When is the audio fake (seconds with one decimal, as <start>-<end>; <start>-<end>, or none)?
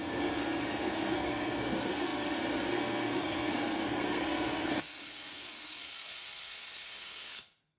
0.0-7.8